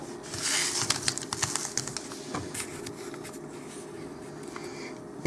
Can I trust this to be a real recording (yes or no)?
yes